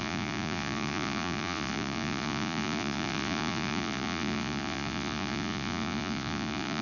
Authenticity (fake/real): fake